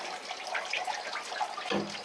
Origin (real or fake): real